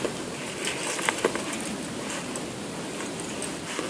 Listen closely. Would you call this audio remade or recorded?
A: recorded